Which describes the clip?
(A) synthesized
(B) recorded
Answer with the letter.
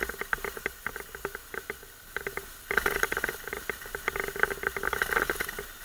B